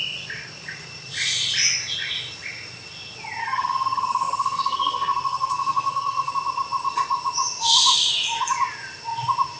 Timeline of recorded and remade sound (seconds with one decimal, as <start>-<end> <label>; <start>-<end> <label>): 0.0-3.4 recorded; 3.4-6.3 remade; 6.3-9.6 recorded